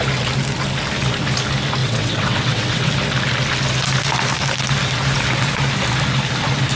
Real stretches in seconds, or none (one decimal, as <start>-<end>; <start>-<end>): 0.0-1.8; 2.9-6.8